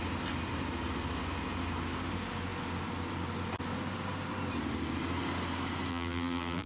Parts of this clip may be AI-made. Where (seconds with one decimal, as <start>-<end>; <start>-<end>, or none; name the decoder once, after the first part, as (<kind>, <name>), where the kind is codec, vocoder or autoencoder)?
5.9-6.7 (vocoder, BigVGAN v2)